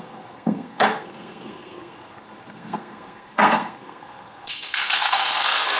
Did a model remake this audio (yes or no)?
yes